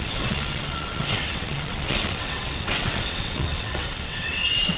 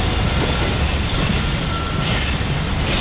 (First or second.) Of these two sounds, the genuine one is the second